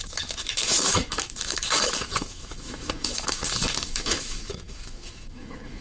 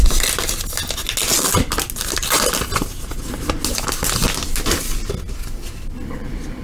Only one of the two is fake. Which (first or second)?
first